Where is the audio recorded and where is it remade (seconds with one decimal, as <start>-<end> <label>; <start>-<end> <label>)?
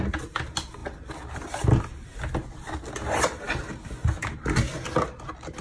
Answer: 0.0-5.6 recorded